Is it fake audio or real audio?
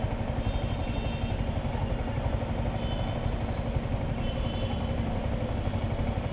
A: real